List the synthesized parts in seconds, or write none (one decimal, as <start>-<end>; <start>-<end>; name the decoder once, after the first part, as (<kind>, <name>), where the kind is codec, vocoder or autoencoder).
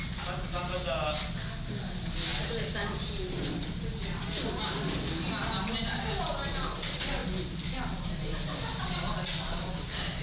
none